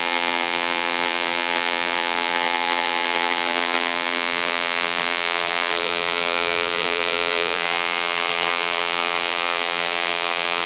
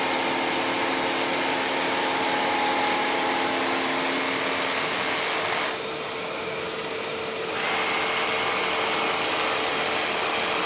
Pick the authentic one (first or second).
second